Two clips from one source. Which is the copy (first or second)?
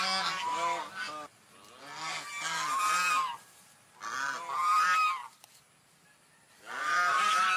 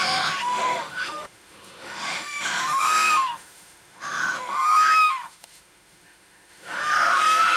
second